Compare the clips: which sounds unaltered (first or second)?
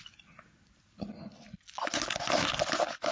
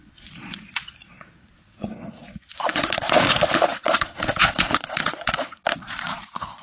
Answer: first